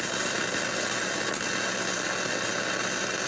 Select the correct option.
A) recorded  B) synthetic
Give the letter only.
A